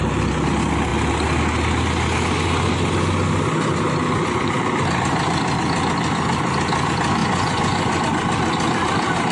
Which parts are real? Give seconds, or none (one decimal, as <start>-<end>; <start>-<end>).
0.0-7.2; 8.0-9.3